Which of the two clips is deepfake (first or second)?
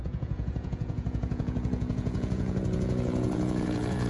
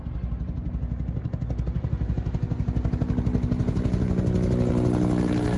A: first